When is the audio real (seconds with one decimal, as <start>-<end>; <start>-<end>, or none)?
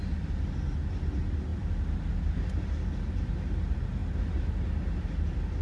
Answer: 0.0-5.6